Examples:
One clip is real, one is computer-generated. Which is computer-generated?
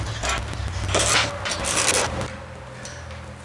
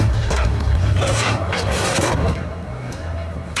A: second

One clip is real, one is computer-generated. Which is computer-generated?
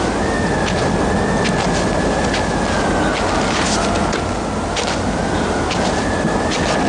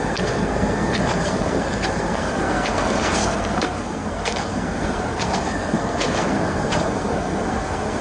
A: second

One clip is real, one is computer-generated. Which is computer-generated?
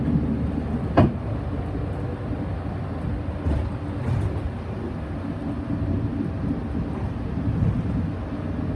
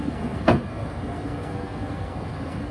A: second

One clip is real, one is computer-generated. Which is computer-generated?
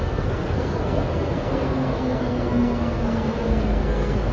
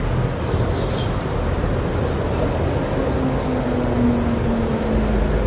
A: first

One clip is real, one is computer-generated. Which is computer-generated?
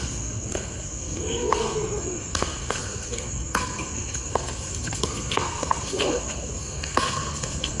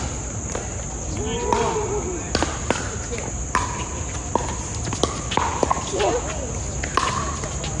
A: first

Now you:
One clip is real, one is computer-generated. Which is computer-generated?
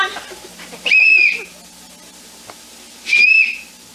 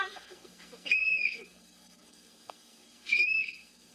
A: second